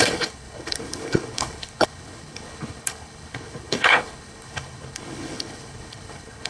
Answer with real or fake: fake